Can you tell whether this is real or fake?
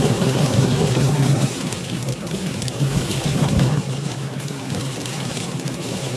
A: fake